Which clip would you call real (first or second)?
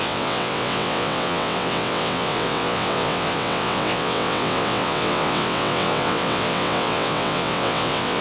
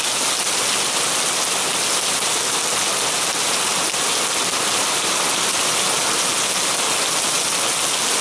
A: second